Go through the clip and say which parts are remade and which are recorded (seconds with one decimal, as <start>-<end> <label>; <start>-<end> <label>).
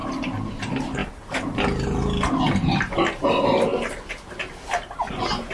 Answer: 0.0-5.5 recorded